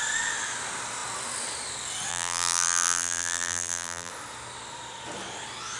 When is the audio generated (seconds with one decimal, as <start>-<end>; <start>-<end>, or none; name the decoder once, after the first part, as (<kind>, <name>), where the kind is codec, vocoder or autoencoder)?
2.1-4.1 (vocoder, BigVGAN v2)